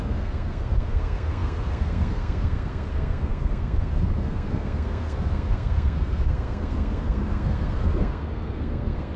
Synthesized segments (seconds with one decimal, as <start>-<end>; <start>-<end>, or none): 0.0-9.2